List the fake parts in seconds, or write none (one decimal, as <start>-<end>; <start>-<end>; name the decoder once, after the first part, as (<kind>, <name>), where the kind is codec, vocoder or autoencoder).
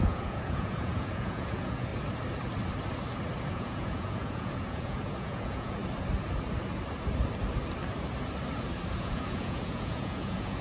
0.0-1.9 (vocoder, Vocos); 3.5-5.8; 9.0-10.6